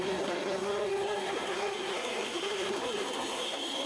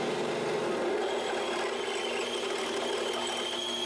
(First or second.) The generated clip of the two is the first